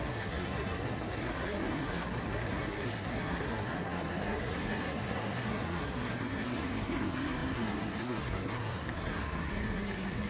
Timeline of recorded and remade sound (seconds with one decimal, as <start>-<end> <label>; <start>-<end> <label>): 0.0-10.3 remade